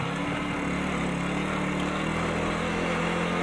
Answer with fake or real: real